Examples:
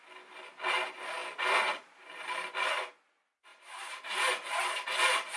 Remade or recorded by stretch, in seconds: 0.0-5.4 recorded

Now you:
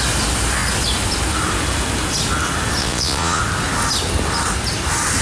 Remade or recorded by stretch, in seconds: 0.0-2.8 recorded; 2.8-3.4 remade; 3.4-5.2 recorded

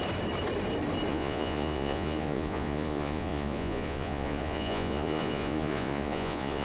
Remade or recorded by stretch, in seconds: 0.0-1.1 recorded; 1.1-6.6 remade

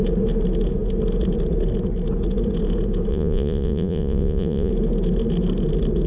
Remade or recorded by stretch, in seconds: 0.0-3.1 recorded; 3.1-4.7 remade; 4.7-6.1 recorded

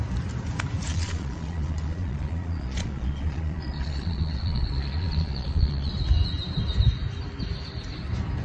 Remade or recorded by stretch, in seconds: 0.0-0.9 recorded; 0.9-5.9 remade; 5.9-8.4 recorded

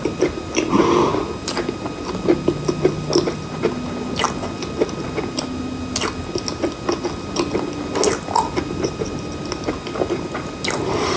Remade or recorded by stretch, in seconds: 0.0-11.2 recorded